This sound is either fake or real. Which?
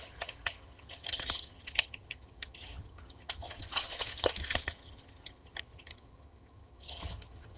fake